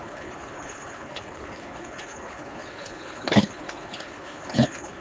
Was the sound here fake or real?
fake